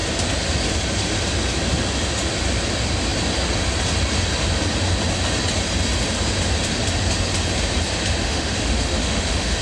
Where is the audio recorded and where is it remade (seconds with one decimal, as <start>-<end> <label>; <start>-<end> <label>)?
0.0-8.2 recorded; 8.2-9.6 remade